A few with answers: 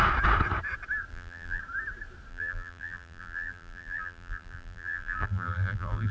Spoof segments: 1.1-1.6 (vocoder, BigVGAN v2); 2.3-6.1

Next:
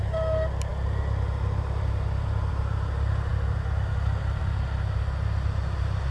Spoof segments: none